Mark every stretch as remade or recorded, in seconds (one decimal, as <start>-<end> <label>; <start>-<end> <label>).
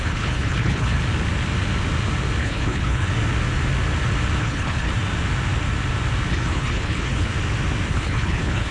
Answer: 0.0-1.0 remade; 1.0-2.4 recorded; 2.4-3.1 remade; 3.1-4.4 recorded; 4.4-4.9 remade; 4.9-6.3 recorded; 6.3-7.3 remade; 7.3-7.9 recorded; 7.9-8.7 remade